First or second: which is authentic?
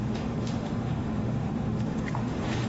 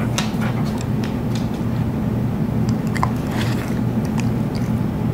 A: second